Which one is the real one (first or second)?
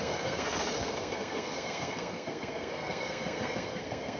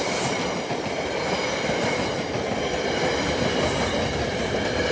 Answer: second